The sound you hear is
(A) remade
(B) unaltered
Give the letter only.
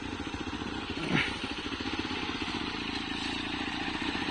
B